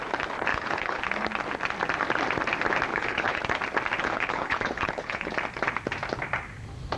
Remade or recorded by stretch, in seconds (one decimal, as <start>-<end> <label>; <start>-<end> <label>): 0.0-0.5 recorded; 0.5-1.0 remade; 1.0-2.9 recorded; 2.9-3.4 remade; 3.4-4.0 recorded; 4.0-5.3 remade; 5.3-7.0 recorded